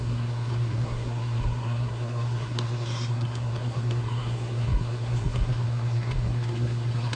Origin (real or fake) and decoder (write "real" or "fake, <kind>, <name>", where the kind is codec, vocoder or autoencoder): fake, codec, SNAC